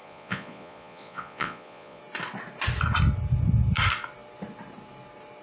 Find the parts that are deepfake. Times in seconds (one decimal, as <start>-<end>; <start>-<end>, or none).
0.0-2.0